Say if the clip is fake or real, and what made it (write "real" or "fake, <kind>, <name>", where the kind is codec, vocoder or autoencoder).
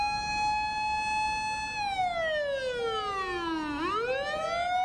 real